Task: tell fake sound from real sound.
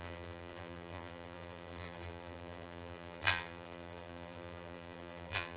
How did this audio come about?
fake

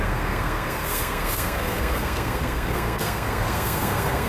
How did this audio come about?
fake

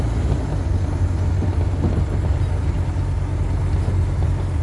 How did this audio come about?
real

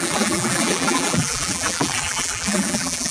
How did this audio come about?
fake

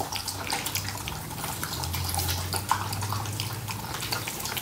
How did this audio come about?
real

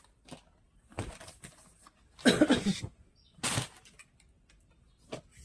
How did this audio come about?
real